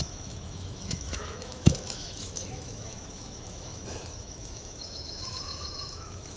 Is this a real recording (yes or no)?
no